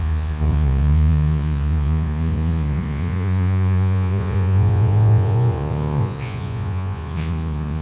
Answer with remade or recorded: remade